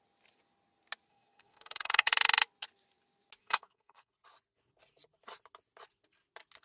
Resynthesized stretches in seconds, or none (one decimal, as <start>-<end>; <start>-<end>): 1.1-2.1; 3.4-4.1